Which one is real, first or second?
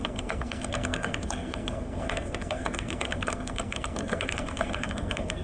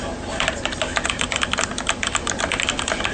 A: second